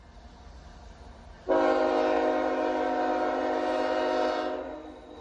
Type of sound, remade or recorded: recorded